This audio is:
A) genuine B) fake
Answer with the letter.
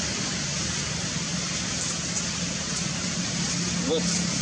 A